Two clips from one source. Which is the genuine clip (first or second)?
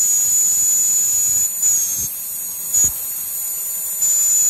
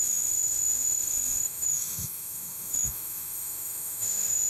first